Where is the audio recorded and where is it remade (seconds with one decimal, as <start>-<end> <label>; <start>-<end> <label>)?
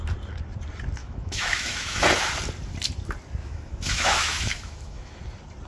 0.0-1.0 recorded; 1.0-2.0 remade; 2.0-3.4 recorded; 3.4-5.2 remade; 5.2-5.7 recorded